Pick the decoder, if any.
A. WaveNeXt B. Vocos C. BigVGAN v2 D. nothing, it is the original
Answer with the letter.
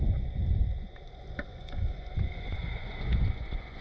B